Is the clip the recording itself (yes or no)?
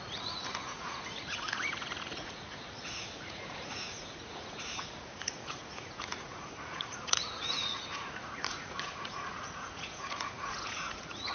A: no